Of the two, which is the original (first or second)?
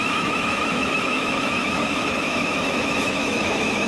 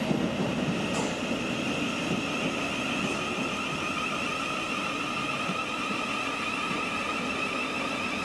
second